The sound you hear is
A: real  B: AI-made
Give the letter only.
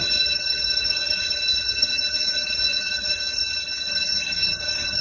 B